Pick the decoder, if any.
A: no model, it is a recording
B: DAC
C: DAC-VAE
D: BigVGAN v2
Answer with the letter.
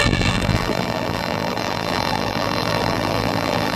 D